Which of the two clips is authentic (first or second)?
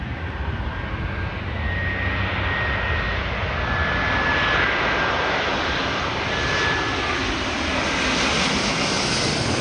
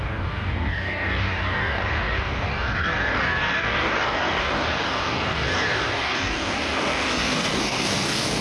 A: first